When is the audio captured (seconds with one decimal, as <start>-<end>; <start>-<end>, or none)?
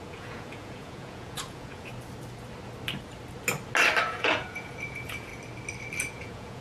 1.9-4.0; 5.3-6.1